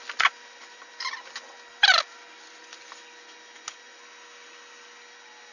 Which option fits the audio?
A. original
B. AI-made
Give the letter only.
A